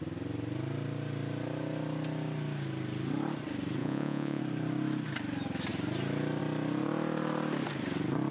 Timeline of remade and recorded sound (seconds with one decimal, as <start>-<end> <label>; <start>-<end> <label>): 0.0-3.8 recorded; 3.8-4.4 remade; 4.4-8.3 recorded